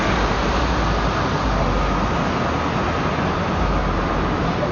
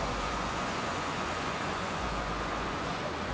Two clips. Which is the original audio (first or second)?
first